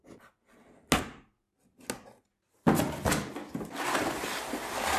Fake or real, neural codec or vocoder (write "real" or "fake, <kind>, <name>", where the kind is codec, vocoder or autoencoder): real